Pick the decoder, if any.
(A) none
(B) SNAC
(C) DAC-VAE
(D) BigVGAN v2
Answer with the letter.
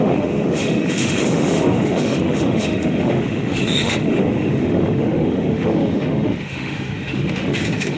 C